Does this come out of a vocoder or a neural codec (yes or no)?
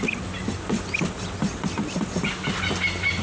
no